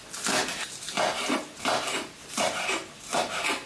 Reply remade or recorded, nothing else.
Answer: remade